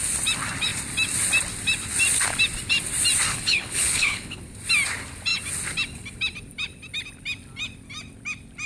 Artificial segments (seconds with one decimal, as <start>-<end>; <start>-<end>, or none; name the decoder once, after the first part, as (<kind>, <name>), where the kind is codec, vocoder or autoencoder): 3.3-4.4 (codec, HILCodec)